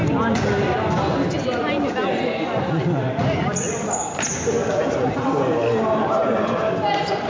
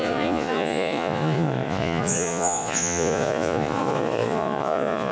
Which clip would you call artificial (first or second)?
second